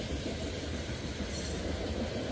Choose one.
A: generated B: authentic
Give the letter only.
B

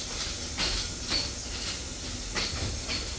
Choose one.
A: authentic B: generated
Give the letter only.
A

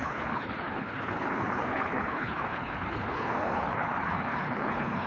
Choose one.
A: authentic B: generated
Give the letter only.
B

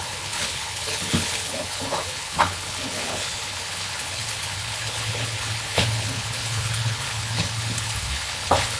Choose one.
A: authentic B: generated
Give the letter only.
B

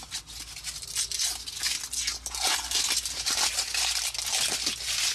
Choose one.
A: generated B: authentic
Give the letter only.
B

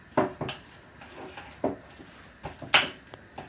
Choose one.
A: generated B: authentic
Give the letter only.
B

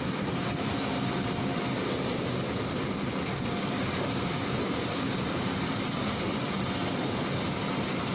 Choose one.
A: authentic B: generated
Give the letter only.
A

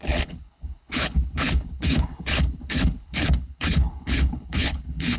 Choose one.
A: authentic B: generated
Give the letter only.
B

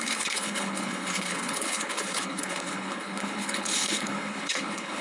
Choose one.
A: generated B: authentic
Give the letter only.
A